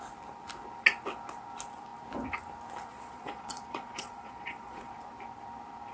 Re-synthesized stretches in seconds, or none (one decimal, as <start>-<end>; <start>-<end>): 2.9-4.9